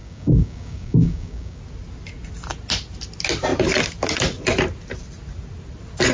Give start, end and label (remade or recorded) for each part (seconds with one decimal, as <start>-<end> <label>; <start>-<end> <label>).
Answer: 0.0-1.6 remade; 1.6-6.1 recorded